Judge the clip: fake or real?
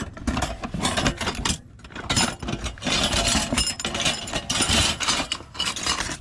real